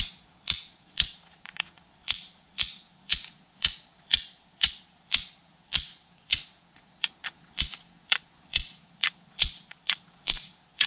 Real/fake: fake